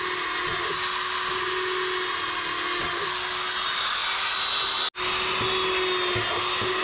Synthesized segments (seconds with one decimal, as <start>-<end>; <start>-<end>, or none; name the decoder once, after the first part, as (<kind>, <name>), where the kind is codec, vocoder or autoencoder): none